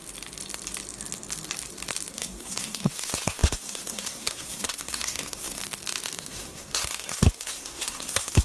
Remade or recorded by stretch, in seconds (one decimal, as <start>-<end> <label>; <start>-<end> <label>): 0.0-2.1 recorded; 2.1-5.6 remade; 5.6-6.2 recorded; 6.2-8.4 remade